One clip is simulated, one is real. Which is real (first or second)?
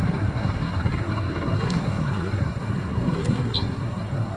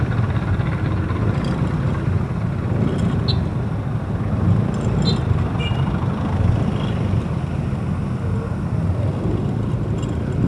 second